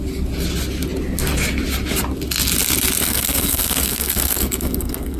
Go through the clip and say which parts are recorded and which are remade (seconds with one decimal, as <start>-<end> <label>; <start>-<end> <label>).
0.0-3.0 recorded; 3.0-5.2 remade